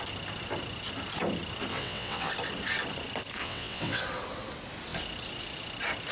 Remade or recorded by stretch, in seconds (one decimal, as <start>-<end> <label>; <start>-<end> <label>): 0.0-1.7 recorded; 1.7-2.3 remade; 2.3-3.4 recorded; 3.4-4.0 remade; 4.0-6.1 recorded